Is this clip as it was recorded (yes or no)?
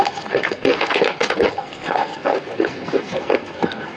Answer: no